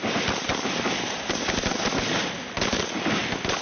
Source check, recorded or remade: recorded